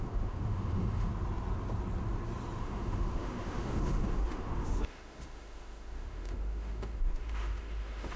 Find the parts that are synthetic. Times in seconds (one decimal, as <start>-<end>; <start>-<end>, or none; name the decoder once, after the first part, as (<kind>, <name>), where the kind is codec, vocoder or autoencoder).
0.0-1.1 (autoencoder, DAC-VAE); 2.6-8.2